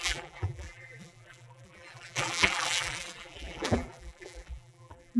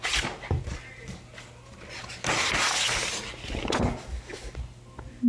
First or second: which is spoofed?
first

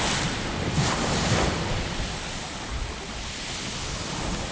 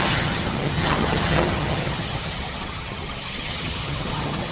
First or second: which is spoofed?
second